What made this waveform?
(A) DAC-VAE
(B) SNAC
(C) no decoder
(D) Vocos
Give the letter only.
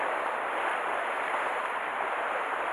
C